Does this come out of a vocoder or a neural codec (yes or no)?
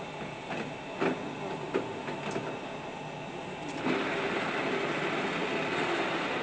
no